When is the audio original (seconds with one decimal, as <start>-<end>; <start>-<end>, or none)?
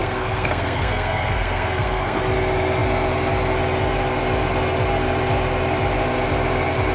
2.2-6.9